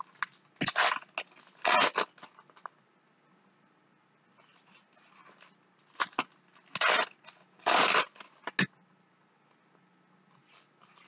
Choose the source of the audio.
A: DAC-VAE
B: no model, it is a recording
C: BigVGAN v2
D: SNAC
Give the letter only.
B